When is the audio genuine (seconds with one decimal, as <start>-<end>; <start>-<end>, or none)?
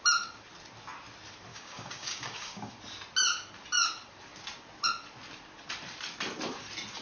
0.0-1.5; 2.7-7.0